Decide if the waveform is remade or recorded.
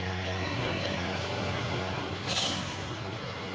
remade